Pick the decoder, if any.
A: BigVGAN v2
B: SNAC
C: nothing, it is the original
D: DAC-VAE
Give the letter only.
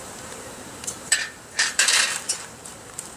A